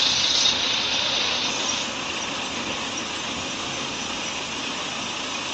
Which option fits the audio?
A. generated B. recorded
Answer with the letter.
B